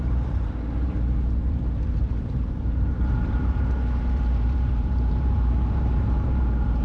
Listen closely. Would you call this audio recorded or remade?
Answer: remade